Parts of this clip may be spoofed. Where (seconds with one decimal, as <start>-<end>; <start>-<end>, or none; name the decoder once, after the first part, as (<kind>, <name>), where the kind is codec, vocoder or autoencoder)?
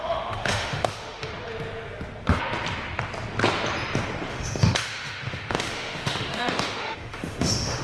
0.0-1.3 (autoencoder, DAC-VAE); 4.3-7.8